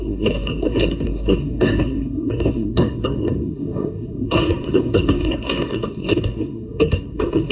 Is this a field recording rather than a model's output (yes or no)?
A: no